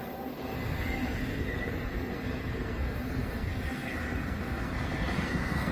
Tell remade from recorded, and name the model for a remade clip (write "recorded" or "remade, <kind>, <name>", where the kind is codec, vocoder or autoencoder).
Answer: remade, codec, SNAC